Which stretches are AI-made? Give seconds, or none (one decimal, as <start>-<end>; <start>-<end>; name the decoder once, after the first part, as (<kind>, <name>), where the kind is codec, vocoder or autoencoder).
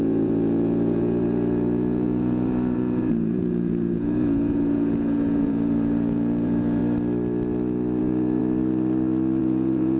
0.0-6.8 (vocoder, Vocos); 8.0-8.4; 9.4-10.0